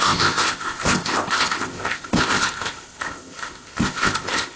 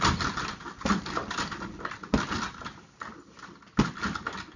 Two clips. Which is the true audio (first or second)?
second